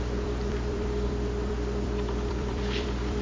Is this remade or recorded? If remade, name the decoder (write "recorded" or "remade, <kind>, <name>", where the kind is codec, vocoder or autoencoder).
remade, vocoder, BigVGAN v2